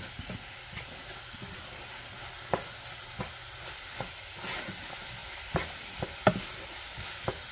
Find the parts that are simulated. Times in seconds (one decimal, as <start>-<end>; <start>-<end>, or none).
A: none